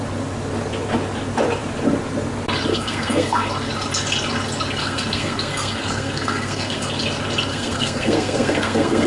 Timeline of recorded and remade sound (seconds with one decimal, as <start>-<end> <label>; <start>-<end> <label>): 0.0-2.7 recorded; 2.7-3.5 remade; 3.5-4.8 recorded; 4.8-6.9 remade; 6.9-7.5 recorded; 7.5-9.1 remade